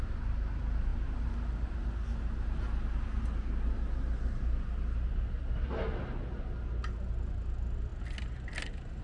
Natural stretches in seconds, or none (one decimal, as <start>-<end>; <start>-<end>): 0.0-9.0